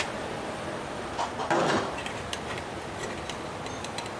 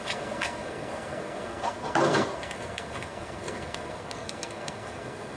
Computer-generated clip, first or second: second